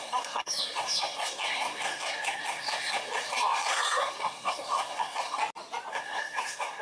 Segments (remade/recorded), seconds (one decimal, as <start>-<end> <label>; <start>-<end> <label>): 0.0-5.4 remade; 5.4-5.9 recorded; 5.9-6.8 remade